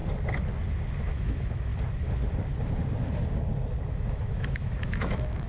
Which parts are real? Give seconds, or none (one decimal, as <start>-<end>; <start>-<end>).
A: 0.0-1.1; 1.7-3.9